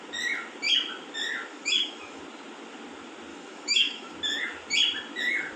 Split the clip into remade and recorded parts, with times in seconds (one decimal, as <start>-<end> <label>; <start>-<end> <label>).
0.0-1.5 recorded; 1.5-2.2 remade; 2.2-3.3 recorded; 3.3-4.1 remade; 4.1-5.6 recorded